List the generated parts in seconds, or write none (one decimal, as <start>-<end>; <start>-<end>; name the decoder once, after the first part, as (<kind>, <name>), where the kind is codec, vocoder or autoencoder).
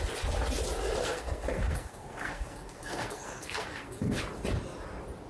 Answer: 1.0-4.2 (codec, SNAC)